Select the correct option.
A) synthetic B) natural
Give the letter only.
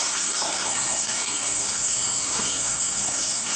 A